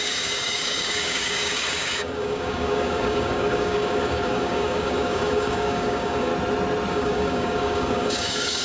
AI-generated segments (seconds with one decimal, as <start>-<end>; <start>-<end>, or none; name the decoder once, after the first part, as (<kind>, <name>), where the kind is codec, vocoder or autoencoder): 0.0-6.3 (codec, DAC); 6.9-8.6